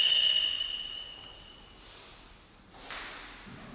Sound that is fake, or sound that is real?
real